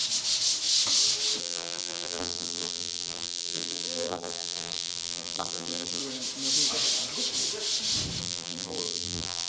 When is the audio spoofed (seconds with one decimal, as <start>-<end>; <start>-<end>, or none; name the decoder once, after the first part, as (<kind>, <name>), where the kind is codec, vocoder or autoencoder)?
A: 1.4-6.0 (vocoder, BigVGAN v2); 8.2-9.5